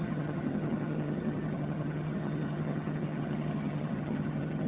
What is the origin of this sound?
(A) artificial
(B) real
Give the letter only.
A